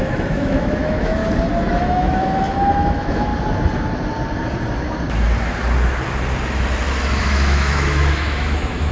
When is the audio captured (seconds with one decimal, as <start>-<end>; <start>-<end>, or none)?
1.2-1.8; 3.3-7.2